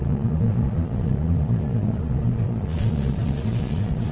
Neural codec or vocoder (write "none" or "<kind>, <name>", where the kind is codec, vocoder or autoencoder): vocoder, Vocos